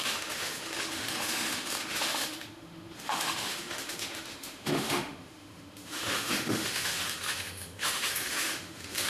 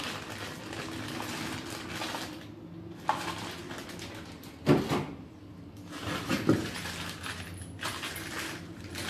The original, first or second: second